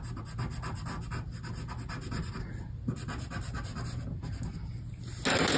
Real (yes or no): yes